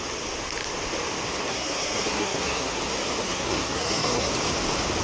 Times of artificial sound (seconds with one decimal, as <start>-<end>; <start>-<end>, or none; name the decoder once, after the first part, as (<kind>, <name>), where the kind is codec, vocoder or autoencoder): 1.5-2.8 (codec, SNAC); 3.2-4.3